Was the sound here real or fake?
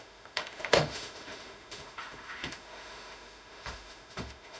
fake